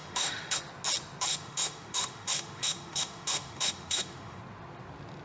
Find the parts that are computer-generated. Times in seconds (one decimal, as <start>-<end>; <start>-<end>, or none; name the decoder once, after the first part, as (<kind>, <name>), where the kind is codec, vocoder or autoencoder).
0.0-0.6 (autoencoder, DAC-VAE); 1.3-4.4